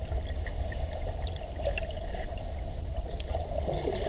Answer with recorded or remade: recorded